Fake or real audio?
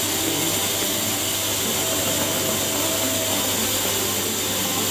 real